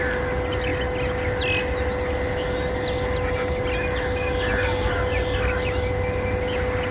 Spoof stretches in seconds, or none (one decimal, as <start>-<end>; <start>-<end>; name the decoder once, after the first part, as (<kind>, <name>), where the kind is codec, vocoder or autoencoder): none